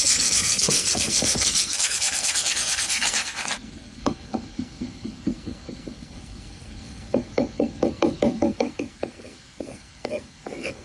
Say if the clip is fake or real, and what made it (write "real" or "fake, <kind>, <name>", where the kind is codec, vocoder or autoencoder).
fake, codec, SNAC